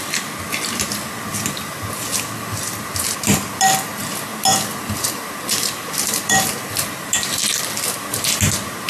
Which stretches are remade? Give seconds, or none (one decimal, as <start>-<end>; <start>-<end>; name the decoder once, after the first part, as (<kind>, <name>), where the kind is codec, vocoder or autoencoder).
none